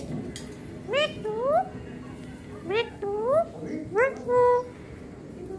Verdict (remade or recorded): recorded